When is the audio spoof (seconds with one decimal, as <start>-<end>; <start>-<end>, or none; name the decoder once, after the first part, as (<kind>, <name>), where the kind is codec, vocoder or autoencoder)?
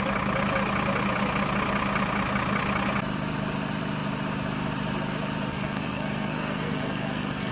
5.5-7.5 (codec, SNAC)